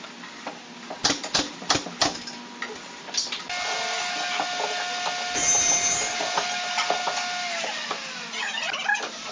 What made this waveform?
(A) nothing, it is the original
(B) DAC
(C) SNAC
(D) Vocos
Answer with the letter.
A